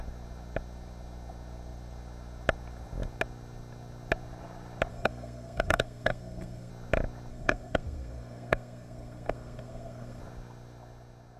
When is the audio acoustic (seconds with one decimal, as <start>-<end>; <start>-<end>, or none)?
0.0-4.9; 6.7-7.3; 10.2-11.4